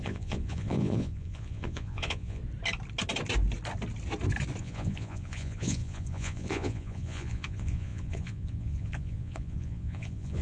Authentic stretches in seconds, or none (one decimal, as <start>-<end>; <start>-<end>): 2.4-4.6